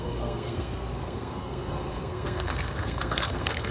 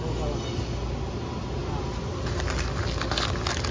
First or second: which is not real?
first